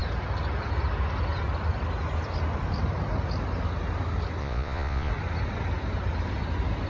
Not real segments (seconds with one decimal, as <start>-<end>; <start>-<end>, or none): 4.4-5.1